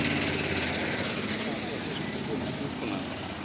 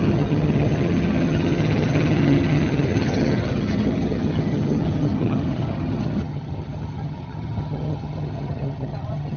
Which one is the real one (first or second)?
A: first